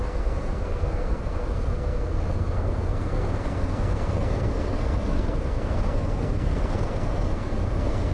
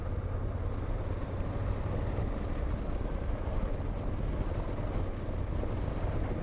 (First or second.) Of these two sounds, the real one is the second